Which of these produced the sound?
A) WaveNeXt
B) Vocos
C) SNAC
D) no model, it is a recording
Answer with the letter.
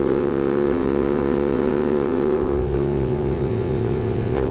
A